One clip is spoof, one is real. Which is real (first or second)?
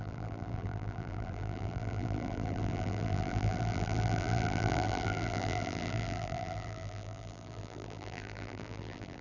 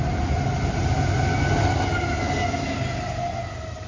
second